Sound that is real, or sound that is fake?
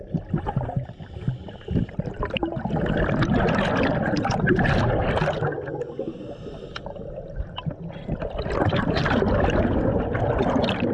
real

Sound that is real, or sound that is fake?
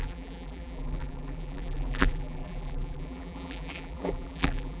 fake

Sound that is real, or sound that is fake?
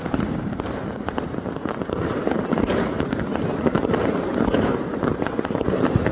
fake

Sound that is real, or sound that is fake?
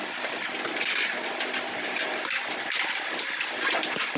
real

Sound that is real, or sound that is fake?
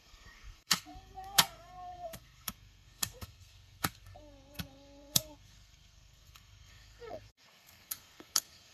fake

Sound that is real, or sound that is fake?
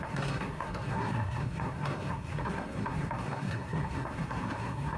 fake